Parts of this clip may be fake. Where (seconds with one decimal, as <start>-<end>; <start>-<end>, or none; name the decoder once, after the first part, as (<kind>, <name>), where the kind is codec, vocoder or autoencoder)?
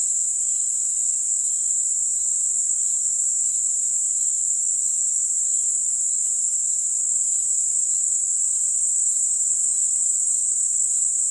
0.0-4.3 (vocoder, BigVGAN v2); 5.2-11.3